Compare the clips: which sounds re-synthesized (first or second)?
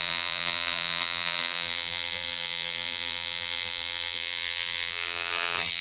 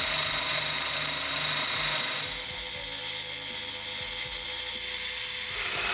first